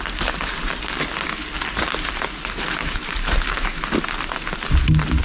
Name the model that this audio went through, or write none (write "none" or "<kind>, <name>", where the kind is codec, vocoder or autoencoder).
vocoder, BigVGAN v2